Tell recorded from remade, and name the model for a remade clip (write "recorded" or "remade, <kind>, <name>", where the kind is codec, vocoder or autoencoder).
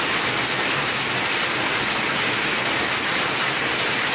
recorded